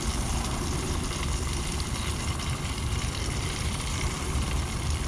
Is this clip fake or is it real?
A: fake